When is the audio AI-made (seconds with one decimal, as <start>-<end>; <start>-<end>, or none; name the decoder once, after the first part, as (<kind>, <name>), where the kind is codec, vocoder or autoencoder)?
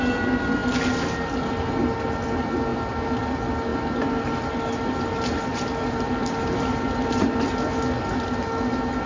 2.7-3.2 (vocoder, BigVGAN v2); 5.5-7.5